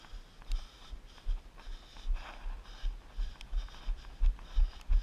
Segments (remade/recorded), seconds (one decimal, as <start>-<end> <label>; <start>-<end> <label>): 0.0-5.0 recorded